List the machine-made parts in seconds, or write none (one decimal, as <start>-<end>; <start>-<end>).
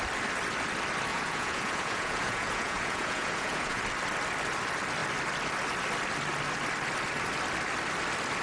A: 1.1-3.8